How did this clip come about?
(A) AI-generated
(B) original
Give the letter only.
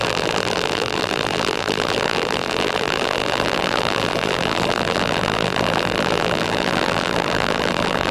A